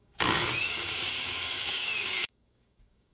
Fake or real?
fake